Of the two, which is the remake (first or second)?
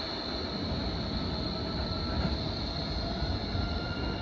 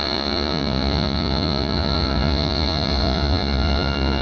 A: second